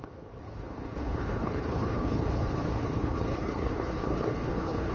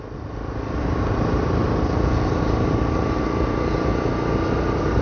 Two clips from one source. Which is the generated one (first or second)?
first